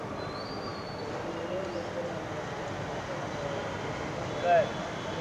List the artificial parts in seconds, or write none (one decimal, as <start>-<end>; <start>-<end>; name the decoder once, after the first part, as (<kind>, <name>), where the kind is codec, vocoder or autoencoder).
none